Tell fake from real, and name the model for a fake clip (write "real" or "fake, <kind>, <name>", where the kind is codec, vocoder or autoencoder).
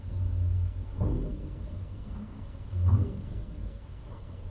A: fake, codec, SNAC